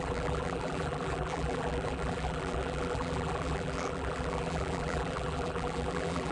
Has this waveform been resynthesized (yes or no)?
yes